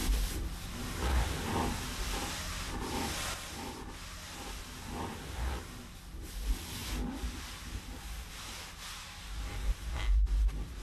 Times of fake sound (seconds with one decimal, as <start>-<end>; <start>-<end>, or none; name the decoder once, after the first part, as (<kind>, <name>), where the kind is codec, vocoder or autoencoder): none